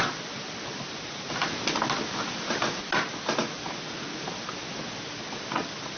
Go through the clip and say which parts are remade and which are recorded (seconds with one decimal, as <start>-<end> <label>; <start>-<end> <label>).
0.0-6.0 recorded